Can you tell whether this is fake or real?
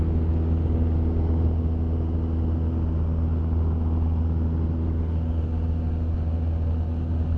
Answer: real